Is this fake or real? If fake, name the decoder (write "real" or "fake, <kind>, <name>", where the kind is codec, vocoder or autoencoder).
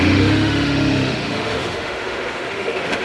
fake, autoencoder, DAC-VAE